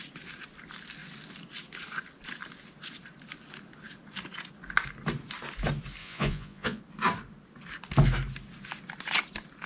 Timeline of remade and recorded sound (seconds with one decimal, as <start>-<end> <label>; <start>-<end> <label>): 0.0-6.0 recorded; 6.0-6.8 remade; 6.8-9.7 recorded